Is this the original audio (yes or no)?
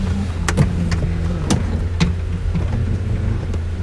yes